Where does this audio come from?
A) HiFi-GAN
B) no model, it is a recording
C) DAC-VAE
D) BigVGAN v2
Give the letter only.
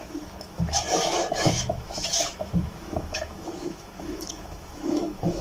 C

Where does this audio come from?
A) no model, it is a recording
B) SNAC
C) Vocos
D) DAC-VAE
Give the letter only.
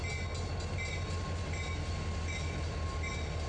A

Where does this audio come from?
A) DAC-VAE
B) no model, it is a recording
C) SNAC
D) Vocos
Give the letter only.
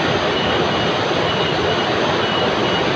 B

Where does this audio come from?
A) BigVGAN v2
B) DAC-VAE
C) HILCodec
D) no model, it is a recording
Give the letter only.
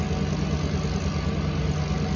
D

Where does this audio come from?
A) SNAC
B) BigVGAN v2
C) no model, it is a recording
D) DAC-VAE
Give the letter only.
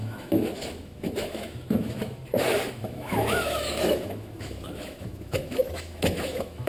D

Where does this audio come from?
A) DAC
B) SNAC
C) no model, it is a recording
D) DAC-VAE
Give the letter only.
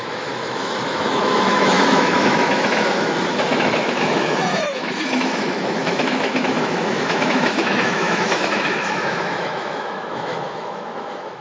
D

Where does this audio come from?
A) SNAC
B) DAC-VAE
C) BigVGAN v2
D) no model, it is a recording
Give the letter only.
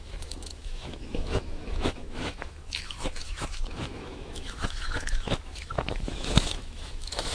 B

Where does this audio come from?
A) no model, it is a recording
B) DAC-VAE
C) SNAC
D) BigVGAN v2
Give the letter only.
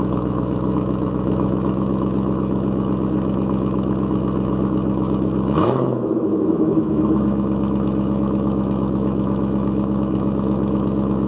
B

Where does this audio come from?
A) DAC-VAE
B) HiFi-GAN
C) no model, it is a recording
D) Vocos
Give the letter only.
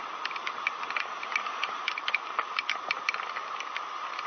C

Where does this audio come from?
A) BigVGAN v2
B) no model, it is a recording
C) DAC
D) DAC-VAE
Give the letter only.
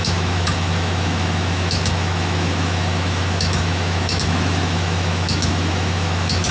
D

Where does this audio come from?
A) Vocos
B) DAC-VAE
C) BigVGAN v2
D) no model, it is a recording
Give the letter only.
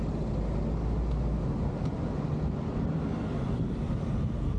D